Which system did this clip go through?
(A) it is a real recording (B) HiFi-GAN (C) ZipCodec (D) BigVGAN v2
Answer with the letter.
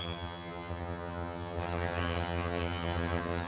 B